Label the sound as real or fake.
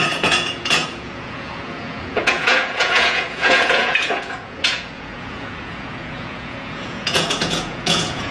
fake